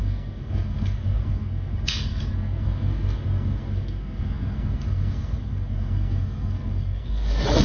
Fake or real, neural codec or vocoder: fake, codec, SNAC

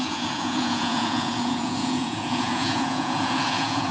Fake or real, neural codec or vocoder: fake, vocoder, Vocos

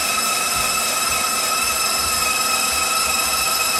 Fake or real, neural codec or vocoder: real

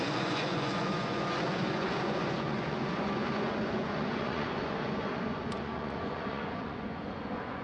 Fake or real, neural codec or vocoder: fake, vocoder, Vocos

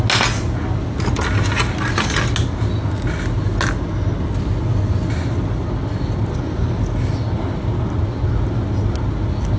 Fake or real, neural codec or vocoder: real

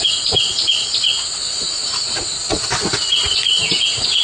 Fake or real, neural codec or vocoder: real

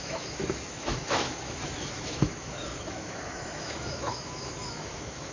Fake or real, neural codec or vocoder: fake, autoencoder, DAC-VAE